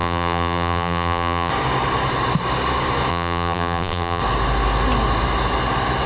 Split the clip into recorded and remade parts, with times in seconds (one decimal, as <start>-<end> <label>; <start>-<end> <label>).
0.0-1.5 remade; 1.5-3.1 recorded; 3.1-4.2 remade; 4.2-6.1 recorded